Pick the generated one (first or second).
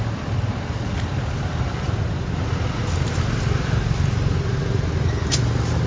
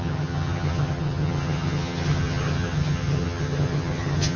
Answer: second